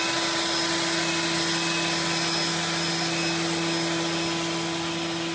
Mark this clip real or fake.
real